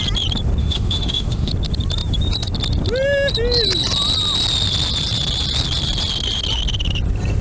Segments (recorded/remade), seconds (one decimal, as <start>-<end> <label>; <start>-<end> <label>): 0.0-0.6 recorded; 0.6-1.5 remade; 1.5-7.4 recorded